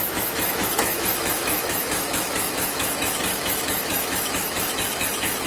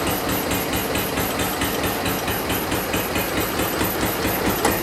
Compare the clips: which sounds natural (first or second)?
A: second